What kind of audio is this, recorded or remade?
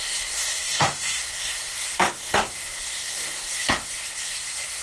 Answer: remade